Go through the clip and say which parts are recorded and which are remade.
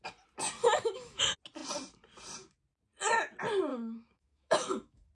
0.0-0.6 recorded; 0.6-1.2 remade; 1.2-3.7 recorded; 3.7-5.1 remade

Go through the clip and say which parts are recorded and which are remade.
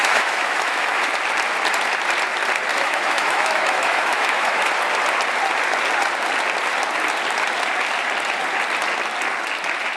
0.0-1.1 remade; 1.1-2.7 recorded; 2.7-4.7 remade; 4.7-10.0 recorded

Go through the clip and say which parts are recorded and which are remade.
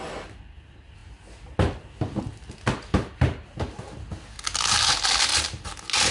0.0-6.1 recorded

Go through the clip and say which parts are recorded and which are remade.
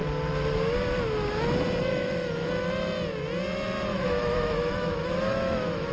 0.0-1.9 recorded; 1.9-2.5 remade; 2.5-3.9 recorded; 3.9-5.9 remade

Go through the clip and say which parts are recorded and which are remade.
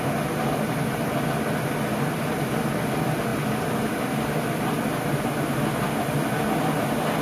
0.0-7.2 recorded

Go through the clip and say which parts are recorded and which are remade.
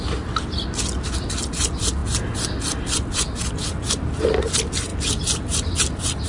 0.0-6.3 recorded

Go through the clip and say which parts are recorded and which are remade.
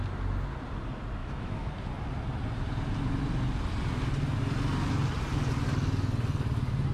0.0-1.2 recorded; 1.2-1.7 remade; 1.7-6.9 recorded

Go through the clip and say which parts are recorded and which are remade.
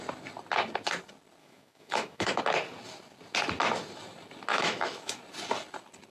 0.0-1.4 recorded; 1.4-2.4 remade; 2.4-4.5 recorded; 4.5-5.2 remade; 5.2-6.1 recorded